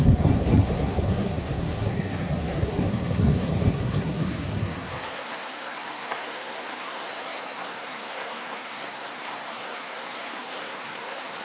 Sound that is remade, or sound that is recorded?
remade